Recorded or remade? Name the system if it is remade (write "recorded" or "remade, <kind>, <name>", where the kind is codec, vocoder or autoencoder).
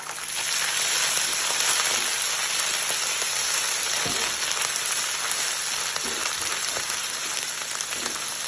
recorded